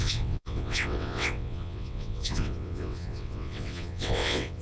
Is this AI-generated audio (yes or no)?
yes